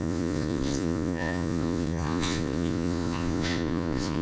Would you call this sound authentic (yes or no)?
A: no